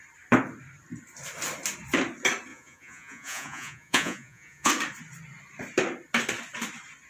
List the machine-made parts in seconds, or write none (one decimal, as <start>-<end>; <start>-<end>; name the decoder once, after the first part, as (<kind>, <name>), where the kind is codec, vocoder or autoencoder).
2.5-4.7 (vocoder, Vocos)